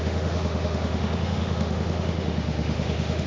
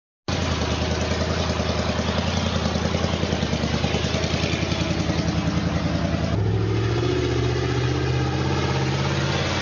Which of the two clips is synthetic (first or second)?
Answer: first